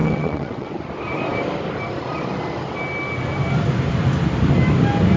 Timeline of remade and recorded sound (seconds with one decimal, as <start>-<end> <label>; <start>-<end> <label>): 0.0-0.8 remade; 0.8-5.2 recorded